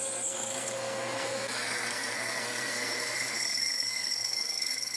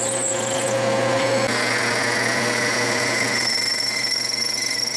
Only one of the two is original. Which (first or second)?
second